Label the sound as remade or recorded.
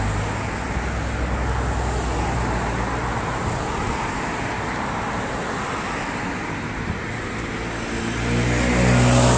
recorded